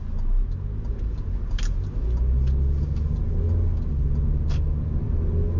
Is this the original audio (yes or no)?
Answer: yes